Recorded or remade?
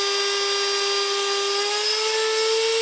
recorded